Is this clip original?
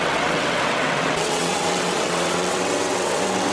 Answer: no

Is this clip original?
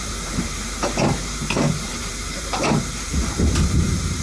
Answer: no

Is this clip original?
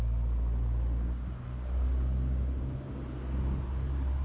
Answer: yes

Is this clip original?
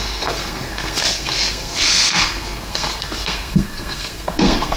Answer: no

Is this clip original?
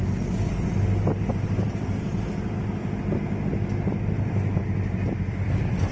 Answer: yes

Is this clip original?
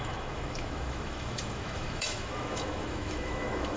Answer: no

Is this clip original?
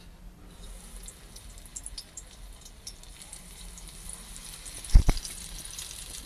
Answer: no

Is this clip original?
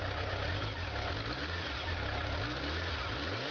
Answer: yes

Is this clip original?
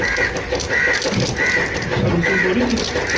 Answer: yes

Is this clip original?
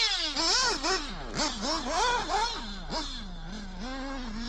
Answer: yes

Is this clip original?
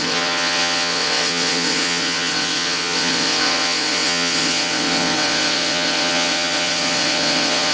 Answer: no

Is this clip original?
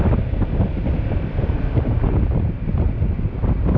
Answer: yes